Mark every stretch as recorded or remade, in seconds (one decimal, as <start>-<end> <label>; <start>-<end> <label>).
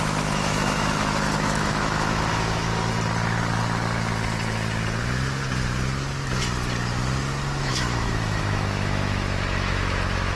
0.0-2.7 remade; 2.7-7.6 recorded; 7.6-10.4 remade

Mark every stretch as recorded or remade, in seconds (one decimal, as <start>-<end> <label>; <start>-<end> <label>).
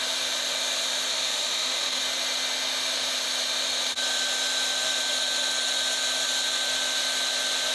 0.0-1.1 recorded; 1.1-2.0 remade; 2.0-7.7 recorded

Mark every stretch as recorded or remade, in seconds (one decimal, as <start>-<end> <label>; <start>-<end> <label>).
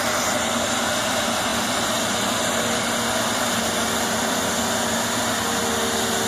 0.0-6.3 recorded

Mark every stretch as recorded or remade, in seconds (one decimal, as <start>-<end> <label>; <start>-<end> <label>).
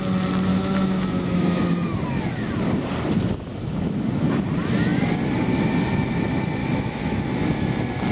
0.0-0.5 recorded; 0.5-1.6 remade; 1.6-3.5 recorded; 3.5-4.3 remade; 4.3-6.6 recorded; 6.6-7.2 remade; 7.2-8.1 recorded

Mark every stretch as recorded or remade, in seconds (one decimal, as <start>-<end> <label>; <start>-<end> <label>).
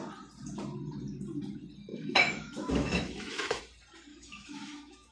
0.0-1.9 recorded; 1.9-3.6 remade; 3.6-4.1 recorded; 4.1-5.1 remade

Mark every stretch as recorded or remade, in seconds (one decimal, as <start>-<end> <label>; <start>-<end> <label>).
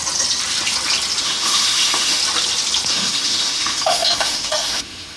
0.0-1.2 recorded; 1.2-2.2 remade; 2.2-2.9 recorded; 2.9-5.2 remade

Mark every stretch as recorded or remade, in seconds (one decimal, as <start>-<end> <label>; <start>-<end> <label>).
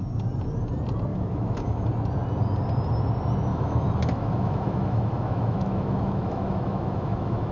0.0-1.1 recorded; 1.1-1.9 remade; 1.9-3.5 recorded; 3.5-7.5 remade